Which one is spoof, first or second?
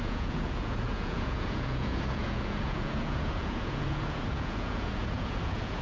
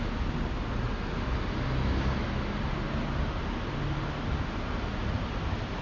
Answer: first